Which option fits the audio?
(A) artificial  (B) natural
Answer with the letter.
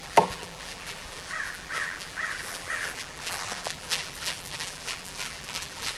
A